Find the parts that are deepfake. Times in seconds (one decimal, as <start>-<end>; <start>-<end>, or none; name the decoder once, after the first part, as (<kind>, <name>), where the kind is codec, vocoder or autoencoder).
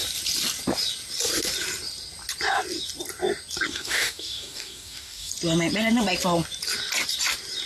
3.7-5.3 (codec, DAC)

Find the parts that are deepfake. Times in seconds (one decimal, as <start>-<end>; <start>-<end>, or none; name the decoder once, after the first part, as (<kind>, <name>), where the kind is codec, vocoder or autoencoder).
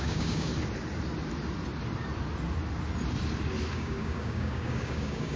0.0-0.5 (codec, DAC); 3.7-5.4